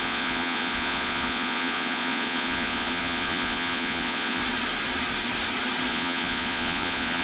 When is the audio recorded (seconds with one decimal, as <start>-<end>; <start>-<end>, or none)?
4.4-5.9